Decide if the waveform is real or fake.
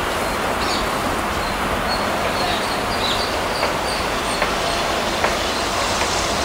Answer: real